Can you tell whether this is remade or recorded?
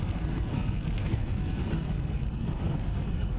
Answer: remade